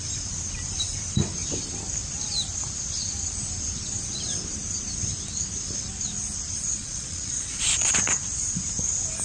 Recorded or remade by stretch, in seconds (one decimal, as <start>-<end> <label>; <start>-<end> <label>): 0.0-6.7 recorded; 6.7-7.9 remade; 7.9-9.2 recorded